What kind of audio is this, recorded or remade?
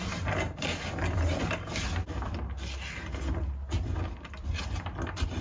recorded